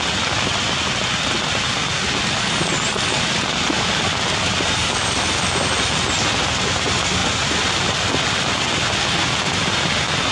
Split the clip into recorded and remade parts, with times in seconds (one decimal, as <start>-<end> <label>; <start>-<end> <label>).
0.0-10.3 recorded